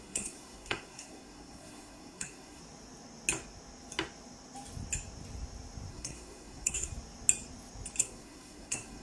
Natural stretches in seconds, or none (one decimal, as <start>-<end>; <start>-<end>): 2.6-5.9; 6.9-8.0